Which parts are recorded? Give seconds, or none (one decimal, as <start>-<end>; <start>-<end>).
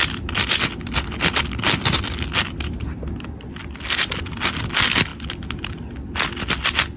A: 0.0-7.0